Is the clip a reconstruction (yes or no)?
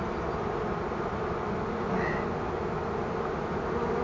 no